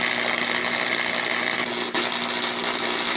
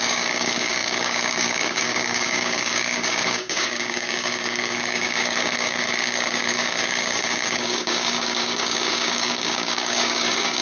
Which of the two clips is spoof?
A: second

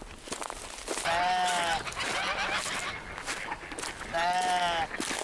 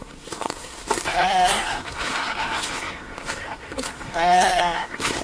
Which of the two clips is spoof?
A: second